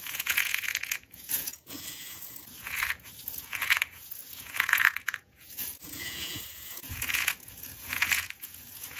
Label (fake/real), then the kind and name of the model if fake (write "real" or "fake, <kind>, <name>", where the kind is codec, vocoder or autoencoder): fake, vocoder, Vocos